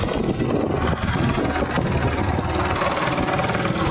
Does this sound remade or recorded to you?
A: recorded